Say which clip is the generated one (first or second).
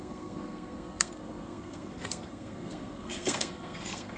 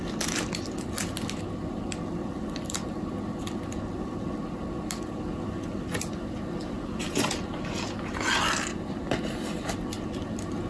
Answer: first